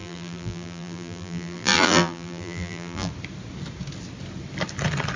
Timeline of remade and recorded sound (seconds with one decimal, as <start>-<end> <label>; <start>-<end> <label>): 0.0-3.1 remade; 3.1-5.2 recorded